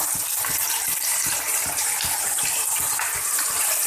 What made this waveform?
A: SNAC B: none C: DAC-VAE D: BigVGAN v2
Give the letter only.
B